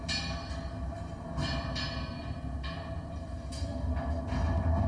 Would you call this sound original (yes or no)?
yes